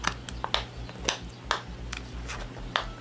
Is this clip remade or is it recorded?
recorded